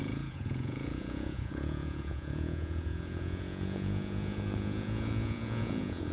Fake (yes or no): yes